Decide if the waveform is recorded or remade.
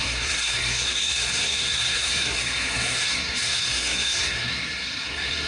remade